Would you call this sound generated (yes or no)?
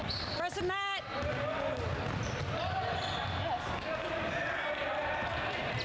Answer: no